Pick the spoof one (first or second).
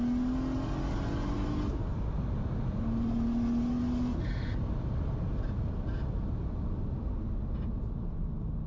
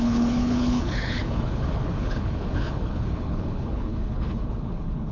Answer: second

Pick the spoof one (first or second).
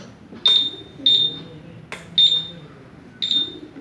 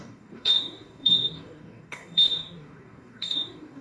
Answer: second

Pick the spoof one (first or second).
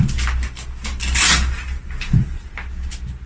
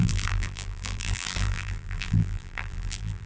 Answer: second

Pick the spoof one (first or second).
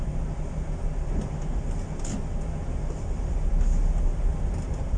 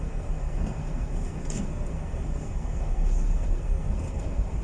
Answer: second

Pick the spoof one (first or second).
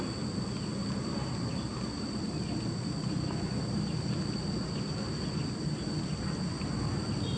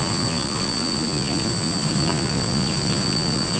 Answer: second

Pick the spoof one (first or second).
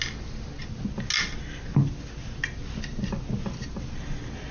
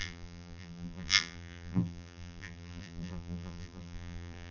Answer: second